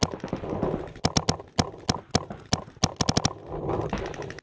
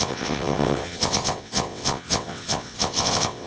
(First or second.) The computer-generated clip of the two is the second